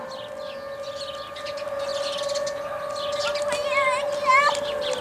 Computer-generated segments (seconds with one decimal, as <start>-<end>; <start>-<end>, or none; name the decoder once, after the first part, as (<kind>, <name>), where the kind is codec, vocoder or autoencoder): none